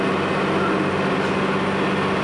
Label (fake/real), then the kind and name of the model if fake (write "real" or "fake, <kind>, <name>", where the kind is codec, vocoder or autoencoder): real